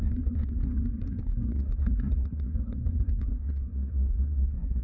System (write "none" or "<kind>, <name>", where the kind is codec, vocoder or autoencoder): codec, SNAC